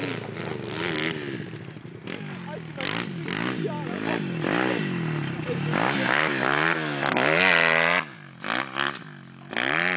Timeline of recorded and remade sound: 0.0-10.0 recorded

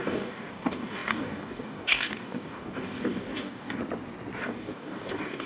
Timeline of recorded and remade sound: 0.0-3.8 remade; 3.8-4.4 recorded; 4.4-5.5 remade

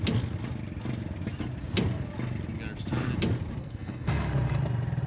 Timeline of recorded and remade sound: 0.0-3.6 recorded; 3.6-4.1 remade; 4.1-5.1 recorded

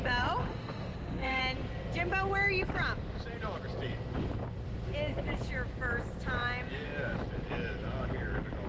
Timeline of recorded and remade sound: 0.0-0.4 recorded; 0.4-1.4 remade; 1.4-8.7 recorded

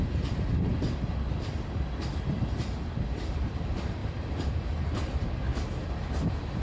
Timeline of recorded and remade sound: 0.0-0.7 remade; 0.7-3.3 recorded; 3.3-4.0 remade; 4.0-4.5 recorded; 4.5-5.5 remade; 5.5-6.0 recorded; 6.0-6.6 remade